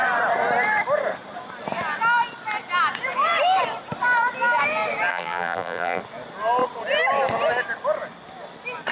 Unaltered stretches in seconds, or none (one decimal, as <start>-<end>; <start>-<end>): 0.0-5.1; 6.0-8.9